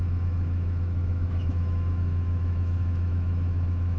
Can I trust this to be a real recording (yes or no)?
no